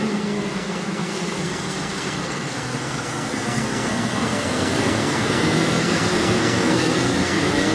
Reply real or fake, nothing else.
fake